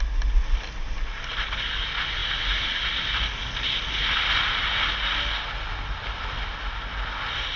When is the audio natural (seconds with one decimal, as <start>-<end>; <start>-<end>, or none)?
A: 0.0-7.6